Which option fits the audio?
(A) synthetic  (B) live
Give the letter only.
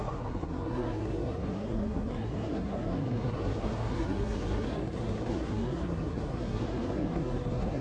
A